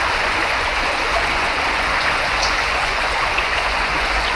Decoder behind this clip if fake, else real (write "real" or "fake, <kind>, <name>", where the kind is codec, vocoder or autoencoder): fake, vocoder, Vocos